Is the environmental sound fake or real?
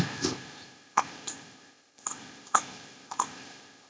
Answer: fake